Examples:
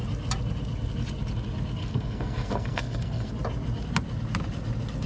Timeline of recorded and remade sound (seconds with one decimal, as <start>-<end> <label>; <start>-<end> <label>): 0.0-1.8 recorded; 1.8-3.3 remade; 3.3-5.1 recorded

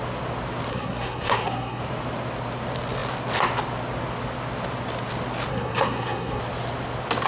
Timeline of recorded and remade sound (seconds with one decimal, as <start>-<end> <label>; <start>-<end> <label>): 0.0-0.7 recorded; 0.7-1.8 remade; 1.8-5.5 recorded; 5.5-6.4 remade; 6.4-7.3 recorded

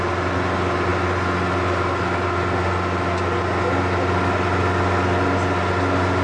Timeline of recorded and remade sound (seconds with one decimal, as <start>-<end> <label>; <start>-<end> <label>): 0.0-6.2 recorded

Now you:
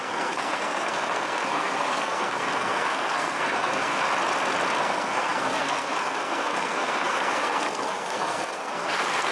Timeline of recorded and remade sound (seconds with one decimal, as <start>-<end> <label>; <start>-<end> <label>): 0.0-4.0 remade; 4.0-4.8 recorded; 4.8-9.3 remade